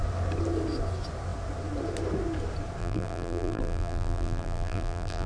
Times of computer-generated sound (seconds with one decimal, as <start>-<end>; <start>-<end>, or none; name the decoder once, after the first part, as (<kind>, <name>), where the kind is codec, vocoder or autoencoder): 2.8-5.3 (vocoder, BigVGAN v2)